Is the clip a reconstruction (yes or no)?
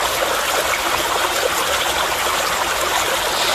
no